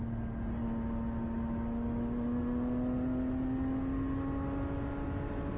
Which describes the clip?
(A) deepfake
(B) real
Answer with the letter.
B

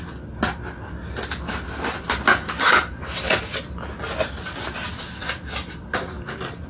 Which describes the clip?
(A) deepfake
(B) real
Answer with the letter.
B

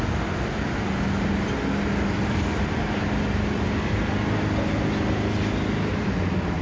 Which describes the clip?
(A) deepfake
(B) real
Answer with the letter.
B